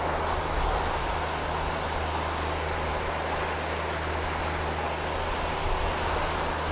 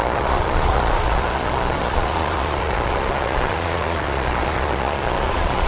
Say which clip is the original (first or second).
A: first